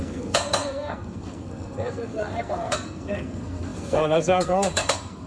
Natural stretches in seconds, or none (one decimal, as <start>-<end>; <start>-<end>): none